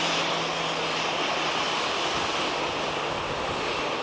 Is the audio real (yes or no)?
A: yes